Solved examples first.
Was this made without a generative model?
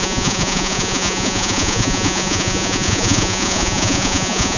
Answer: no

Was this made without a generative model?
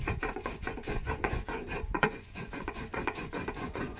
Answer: no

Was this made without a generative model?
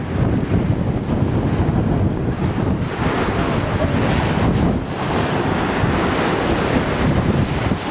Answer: yes